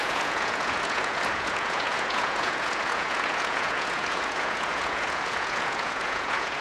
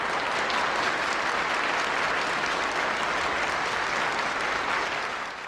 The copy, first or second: first